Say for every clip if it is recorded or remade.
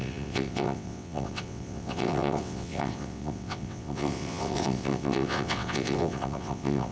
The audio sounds remade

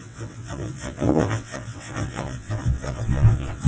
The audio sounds remade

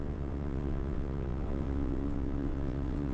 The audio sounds remade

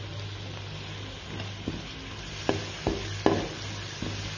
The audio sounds recorded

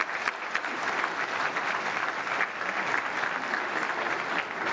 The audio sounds recorded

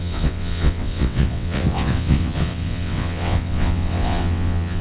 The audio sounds remade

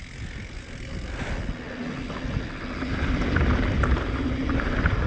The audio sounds recorded